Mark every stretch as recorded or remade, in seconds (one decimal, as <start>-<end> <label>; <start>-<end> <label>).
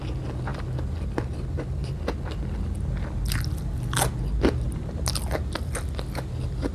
0.0-6.7 recorded